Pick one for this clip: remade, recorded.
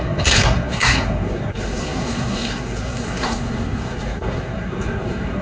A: remade